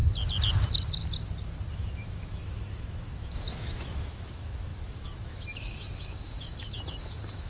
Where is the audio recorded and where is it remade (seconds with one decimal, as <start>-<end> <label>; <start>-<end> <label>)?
0.0-1.7 recorded; 1.7-7.5 remade